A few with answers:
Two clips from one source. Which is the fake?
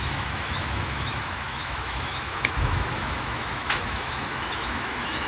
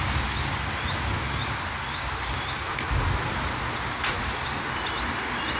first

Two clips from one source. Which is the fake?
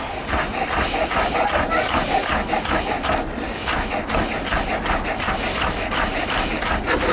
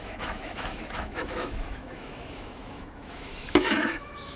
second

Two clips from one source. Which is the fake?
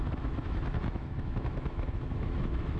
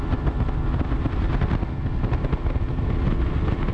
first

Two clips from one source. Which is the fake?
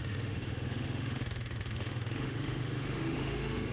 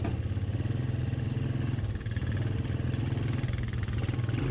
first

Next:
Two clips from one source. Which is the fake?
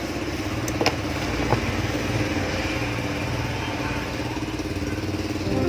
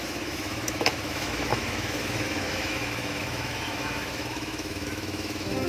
second